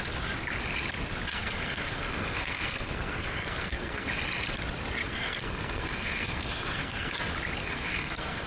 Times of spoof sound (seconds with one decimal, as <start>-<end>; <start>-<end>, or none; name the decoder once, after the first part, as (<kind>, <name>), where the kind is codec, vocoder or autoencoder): 1.3-4.1 (codec, SNAC); 5.0-7.1; 7.6-8.5